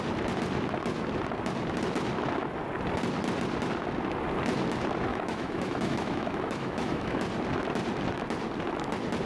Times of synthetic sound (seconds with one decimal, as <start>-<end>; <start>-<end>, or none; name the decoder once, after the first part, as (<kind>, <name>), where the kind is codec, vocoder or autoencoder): 5.1-7.2 (autoencoder, DAC-VAE)